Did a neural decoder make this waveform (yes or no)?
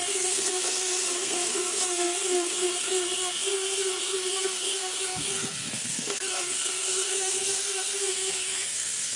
yes